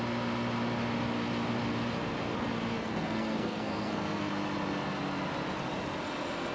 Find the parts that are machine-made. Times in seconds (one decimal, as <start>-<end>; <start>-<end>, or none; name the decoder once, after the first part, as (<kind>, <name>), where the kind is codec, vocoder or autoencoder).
2.8-4.3 (codec, SNAC)